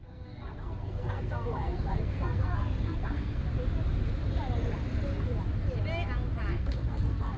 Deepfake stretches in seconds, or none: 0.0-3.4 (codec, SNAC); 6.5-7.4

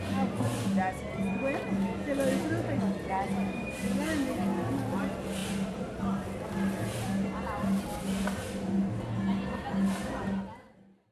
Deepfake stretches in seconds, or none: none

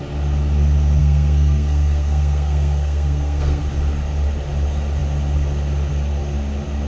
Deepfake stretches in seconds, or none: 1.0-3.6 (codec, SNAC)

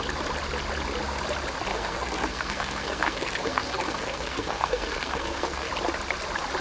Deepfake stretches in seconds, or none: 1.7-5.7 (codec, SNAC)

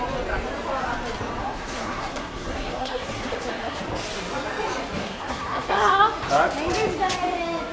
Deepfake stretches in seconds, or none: 1.4-3.8 (codec, SNAC); 5.0-5.9

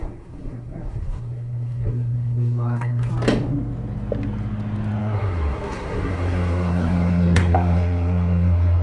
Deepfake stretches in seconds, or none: 0.0-3.1 (codec, SNAC); 5.0-8.8

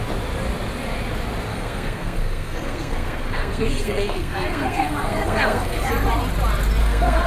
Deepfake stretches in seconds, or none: 1.5-5.9 (codec, SNAC); 6.8-7.3

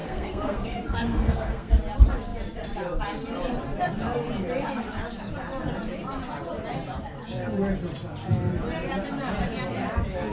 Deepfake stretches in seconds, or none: 0.0-1.7 (codec, SNAC)